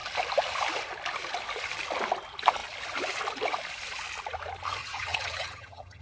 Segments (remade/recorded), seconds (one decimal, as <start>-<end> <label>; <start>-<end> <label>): 0.0-4.8 recorded; 4.8-6.0 remade